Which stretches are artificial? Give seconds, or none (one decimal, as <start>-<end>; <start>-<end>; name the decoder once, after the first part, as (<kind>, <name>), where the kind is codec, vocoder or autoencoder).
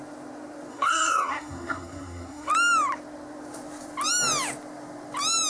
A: 0.7-2.5 (codec, SNAC)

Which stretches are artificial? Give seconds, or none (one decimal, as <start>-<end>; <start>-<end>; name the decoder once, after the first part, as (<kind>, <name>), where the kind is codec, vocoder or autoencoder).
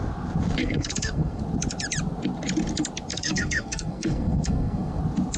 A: 0.6-1.4 (codec, SNAC); 3.1-5.0